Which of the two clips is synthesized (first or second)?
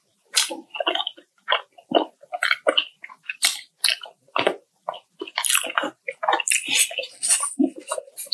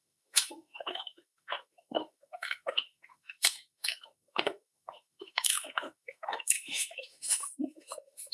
second